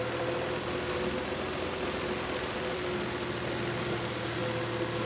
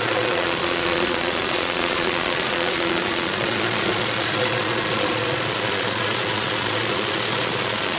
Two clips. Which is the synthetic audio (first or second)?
second